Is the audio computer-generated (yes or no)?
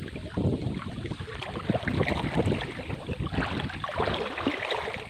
no